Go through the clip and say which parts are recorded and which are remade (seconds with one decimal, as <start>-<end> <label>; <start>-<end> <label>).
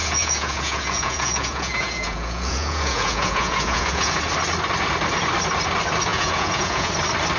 0.0-4.2 remade; 4.2-6.1 recorded; 6.1-6.9 remade; 6.9-7.4 recorded